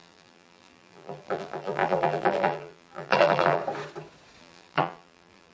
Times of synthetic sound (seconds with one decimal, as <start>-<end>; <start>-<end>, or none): 0.0-3.6; 4.4-5.5